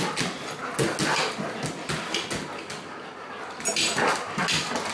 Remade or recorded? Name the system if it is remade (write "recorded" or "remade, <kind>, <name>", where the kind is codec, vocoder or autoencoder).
recorded